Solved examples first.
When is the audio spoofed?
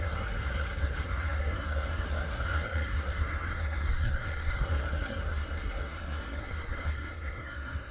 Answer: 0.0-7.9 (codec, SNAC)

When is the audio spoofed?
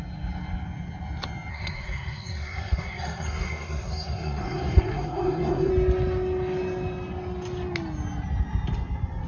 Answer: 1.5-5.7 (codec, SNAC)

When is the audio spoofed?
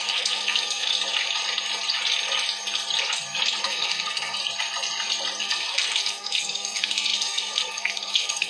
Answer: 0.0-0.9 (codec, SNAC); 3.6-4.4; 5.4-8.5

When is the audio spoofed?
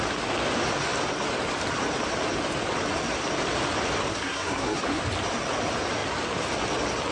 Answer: 4.1-5.0 (codec, SNAC)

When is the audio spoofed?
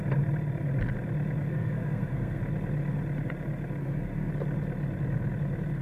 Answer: 1.5-2.4 (codec, SNAC); 3.8-4.3